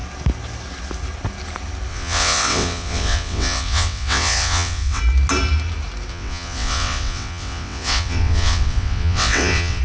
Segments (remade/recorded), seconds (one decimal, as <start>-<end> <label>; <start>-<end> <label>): 0.0-1.9 recorded; 1.9-5.0 remade; 5.0-6.1 recorded; 6.1-9.8 remade

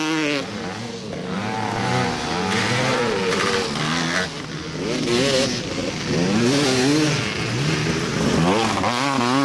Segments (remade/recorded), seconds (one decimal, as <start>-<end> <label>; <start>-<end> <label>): 0.0-9.4 recorded

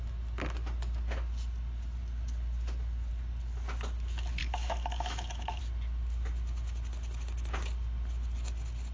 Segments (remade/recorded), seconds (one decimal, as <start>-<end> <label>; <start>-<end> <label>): 0.0-4.4 recorded; 4.4-5.6 remade; 5.6-8.9 recorded

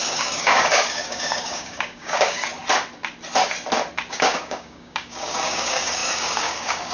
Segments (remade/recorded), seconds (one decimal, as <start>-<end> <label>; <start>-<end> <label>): 0.0-2.5 remade; 2.5-4.1 recorded; 4.1-6.9 remade

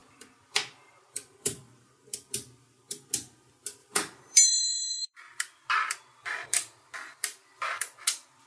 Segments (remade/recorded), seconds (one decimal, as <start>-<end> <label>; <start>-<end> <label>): 0.0-1.7 remade; 1.7-3.8 recorded; 3.8-5.2 remade; 5.2-8.5 recorded

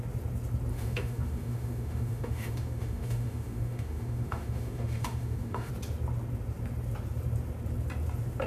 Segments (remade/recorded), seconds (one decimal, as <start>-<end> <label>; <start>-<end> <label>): 0.0-0.7 recorded; 0.7-5.7 remade; 5.7-8.5 recorded

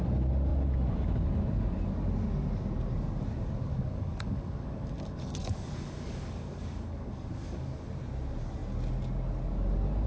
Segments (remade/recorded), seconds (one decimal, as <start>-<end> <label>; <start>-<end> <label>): 0.0-3.7 recorded; 3.7-7.9 remade; 7.9-10.1 recorded